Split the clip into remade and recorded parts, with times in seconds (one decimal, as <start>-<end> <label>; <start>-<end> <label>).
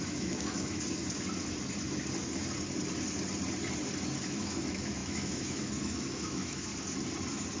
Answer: 0.0-1.0 remade; 1.0-4.2 recorded; 4.2-6.7 remade; 6.7-7.6 recorded